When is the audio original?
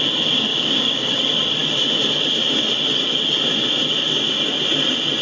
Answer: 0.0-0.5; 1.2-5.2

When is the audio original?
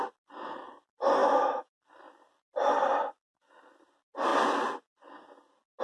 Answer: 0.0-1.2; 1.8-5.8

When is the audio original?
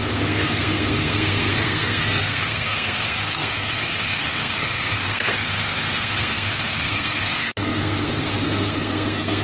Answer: none